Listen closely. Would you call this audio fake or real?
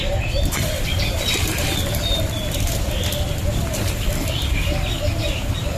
real